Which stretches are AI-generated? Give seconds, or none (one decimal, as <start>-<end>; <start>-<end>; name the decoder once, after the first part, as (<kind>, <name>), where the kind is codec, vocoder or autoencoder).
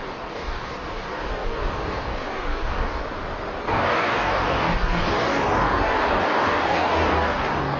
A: 0.0-3.0 (codec, DAC); 3.6-7.8